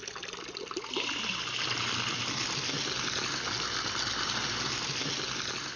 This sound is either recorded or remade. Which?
recorded